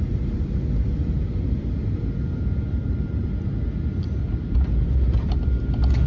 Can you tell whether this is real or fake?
real